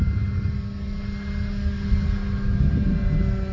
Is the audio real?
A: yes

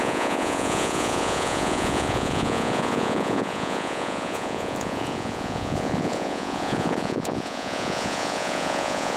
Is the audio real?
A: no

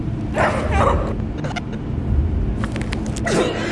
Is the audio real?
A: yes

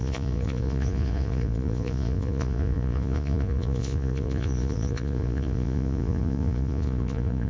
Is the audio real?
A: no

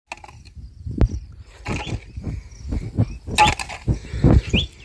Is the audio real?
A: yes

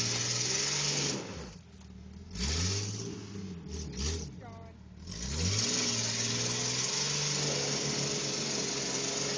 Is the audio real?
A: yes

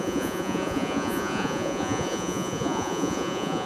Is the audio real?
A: no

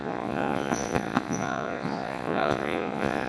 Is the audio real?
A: no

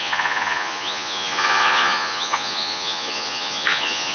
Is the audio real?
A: no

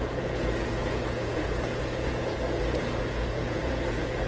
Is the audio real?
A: no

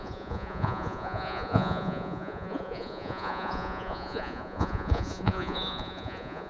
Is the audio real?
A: no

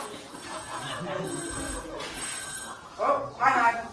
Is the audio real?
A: no